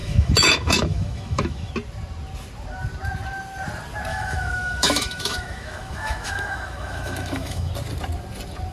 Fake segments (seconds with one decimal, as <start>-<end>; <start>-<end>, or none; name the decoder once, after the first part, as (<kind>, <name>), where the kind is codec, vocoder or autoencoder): 0.0-1.7 (autoencoder, DAC-VAE); 4.1-7.7

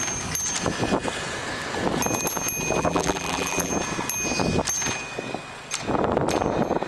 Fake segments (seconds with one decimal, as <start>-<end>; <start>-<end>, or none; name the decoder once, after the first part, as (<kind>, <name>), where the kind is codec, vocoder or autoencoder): 2.8-3.7 (vocoder, BigVGAN v2)

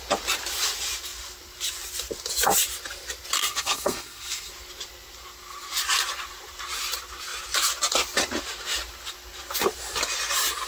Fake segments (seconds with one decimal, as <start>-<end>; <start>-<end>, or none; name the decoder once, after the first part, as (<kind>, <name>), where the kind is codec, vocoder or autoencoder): 3.4-4.5 (codec, SNAC)

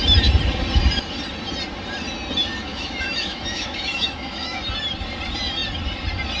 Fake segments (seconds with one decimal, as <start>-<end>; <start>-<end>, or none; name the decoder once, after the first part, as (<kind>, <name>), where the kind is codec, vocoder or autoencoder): 2.7-4.6 (autoencoder, DAC-VAE)